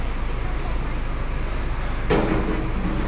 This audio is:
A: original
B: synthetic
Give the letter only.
A